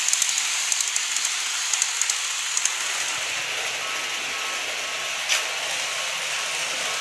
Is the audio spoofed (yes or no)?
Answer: no